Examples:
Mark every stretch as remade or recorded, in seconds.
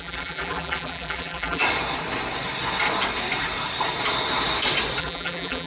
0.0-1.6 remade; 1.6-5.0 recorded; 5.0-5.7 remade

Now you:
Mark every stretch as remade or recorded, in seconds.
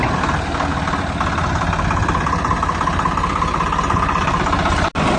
0.0-5.2 recorded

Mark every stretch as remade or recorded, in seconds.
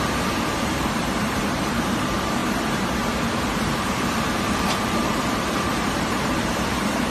0.0-7.1 remade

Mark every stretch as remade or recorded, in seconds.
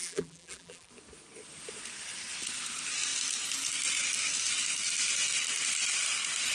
0.0-0.9 remade; 0.9-6.5 recorded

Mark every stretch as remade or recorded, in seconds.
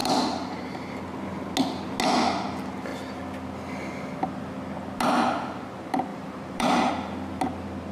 0.0-0.9 remade; 0.9-6.1 recorded; 6.1-6.9 remade; 6.9-7.9 recorded